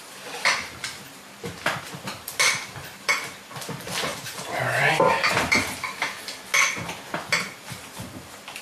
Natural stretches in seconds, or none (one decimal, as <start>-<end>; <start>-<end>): 6.5-7.3